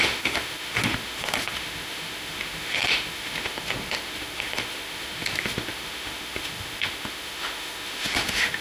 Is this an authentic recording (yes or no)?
no